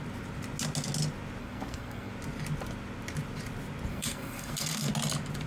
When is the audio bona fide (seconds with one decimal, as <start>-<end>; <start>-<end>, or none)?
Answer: 0.0-1.4; 2.1-3.9; 4.9-5.5